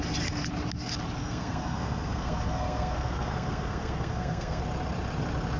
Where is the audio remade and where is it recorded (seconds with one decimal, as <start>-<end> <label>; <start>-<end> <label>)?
0.0-1.2 recorded; 1.2-4.6 remade; 4.6-5.6 recorded